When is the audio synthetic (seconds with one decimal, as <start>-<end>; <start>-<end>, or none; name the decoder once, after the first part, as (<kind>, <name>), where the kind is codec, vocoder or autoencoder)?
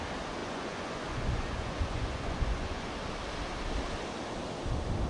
0.4-2.9 (vocoder, Vocos)